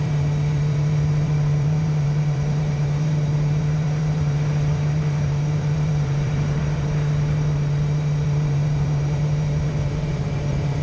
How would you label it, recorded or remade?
remade